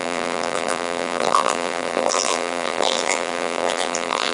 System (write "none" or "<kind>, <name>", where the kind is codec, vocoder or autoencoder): vocoder, BigVGAN v2